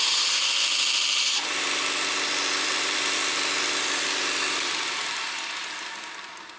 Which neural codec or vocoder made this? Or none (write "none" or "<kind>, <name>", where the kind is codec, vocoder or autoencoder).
none